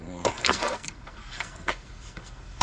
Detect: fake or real fake